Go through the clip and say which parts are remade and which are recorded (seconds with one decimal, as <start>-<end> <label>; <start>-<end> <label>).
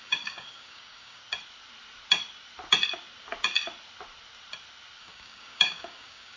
0.0-1.2 remade; 1.2-5.0 recorded; 5.0-6.4 remade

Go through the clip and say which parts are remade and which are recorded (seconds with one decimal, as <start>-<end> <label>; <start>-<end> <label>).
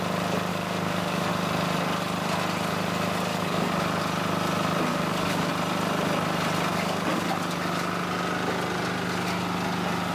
0.0-0.5 recorded; 0.5-1.3 remade; 1.3-3.3 recorded; 3.3-3.8 remade; 3.8-4.9 recorded; 4.9-5.5 remade; 5.5-6.7 recorded; 6.7-7.3 remade; 7.3-10.1 recorded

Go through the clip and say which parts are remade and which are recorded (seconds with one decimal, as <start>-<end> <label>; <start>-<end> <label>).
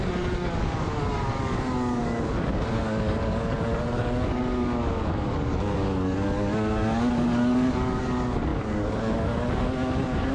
0.0-10.3 remade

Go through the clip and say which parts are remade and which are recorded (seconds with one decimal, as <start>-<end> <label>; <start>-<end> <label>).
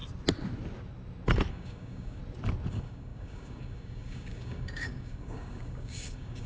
0.0-1.5 recorded; 1.5-2.2 remade; 2.2-2.7 recorded; 2.7-6.5 remade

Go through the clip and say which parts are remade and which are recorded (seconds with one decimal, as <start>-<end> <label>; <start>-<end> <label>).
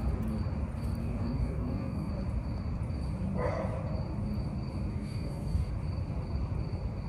0.0-1.0 recorded; 1.0-2.1 remade; 2.1-4.9 recorded; 4.9-5.7 remade; 5.7-7.1 recorded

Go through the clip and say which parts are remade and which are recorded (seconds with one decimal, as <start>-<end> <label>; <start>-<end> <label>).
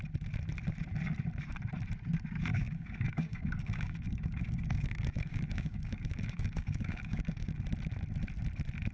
0.0-2.5 recorded; 2.5-7.6 remade; 7.6-8.9 recorded